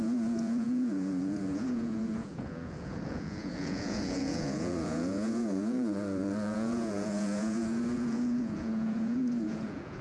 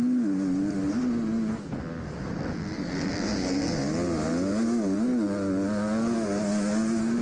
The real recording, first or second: second